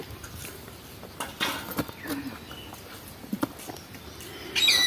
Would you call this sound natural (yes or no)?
yes